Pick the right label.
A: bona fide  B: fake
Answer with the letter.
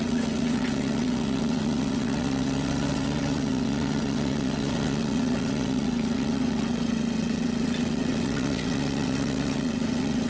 B